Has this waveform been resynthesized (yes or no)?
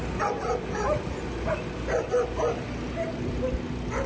no